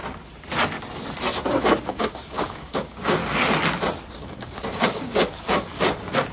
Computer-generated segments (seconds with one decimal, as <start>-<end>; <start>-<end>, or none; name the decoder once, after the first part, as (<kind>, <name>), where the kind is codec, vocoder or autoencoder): 1.5-3.2 (codec, DAC); 4.1-6.3